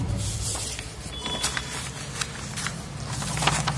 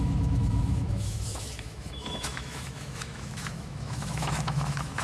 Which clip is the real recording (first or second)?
first